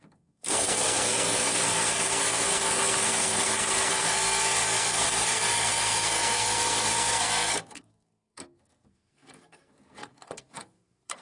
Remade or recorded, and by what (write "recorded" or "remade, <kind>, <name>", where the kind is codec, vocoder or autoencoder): remade, codec, SNAC